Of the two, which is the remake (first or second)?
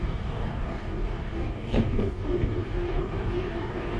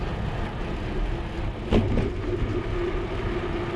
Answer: first